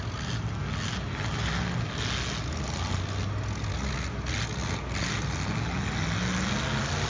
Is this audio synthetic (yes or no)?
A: no